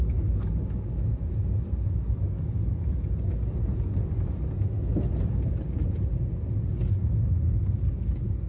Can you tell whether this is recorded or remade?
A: recorded